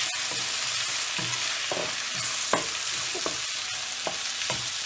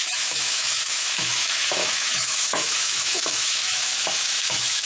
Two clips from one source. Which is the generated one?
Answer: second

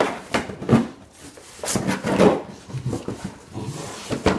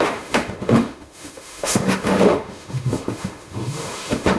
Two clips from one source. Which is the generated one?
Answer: second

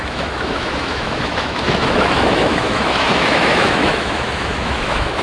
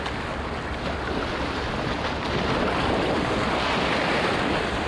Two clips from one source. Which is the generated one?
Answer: first